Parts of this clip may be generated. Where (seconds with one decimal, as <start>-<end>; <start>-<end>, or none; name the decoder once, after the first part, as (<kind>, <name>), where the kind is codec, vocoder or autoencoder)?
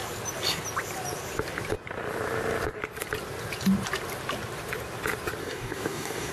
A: 5.4-6.3 (codec, DAC)